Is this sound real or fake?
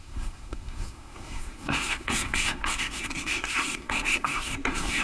fake